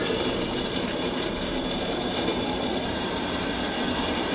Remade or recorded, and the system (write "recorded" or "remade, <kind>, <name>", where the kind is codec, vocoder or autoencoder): remade, vocoder, BigVGAN v2